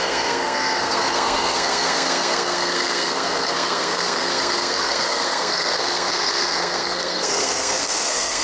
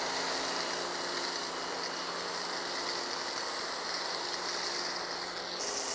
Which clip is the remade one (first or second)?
first